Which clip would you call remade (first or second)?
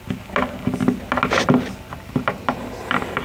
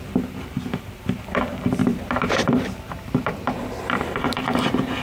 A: second